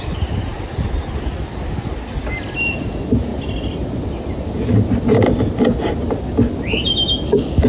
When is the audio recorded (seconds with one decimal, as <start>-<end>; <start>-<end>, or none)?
0.0-7.7